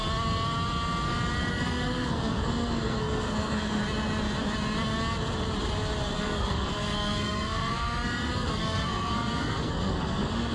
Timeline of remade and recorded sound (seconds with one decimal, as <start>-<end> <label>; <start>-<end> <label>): 0.0-1.5 recorded; 1.5-3.8 remade; 3.8-6.2 recorded; 6.2-10.5 remade